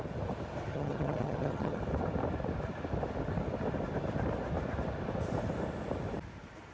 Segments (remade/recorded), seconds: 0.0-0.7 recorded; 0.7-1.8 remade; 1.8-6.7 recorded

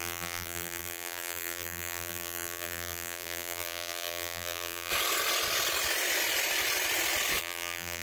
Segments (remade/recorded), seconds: 0.0-4.9 remade; 4.9-7.4 recorded; 7.4-8.0 remade

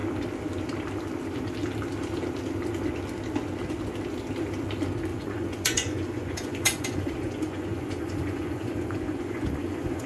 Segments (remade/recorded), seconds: 0.0-5.1 recorded; 5.1-10.1 remade